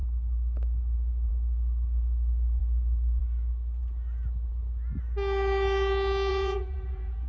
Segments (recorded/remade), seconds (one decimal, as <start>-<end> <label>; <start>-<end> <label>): 0.0-6.3 recorded; 6.3-7.3 remade